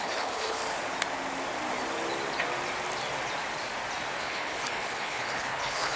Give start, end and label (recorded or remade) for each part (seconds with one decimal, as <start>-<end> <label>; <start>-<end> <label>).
0.0-0.6 remade; 0.6-4.2 recorded; 4.2-6.0 remade